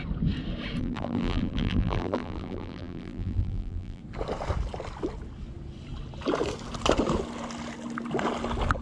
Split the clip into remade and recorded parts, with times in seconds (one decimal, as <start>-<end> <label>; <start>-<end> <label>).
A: 0.0-0.8 recorded; 0.8-4.0 remade; 4.0-8.8 recorded